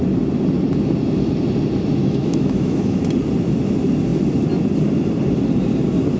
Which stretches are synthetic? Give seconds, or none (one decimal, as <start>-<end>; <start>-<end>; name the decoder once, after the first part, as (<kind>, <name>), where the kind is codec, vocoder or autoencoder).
2.0-3.0 (autoencoder, DAC-VAE)